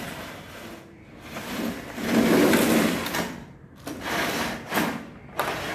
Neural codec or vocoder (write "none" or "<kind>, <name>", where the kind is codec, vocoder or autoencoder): none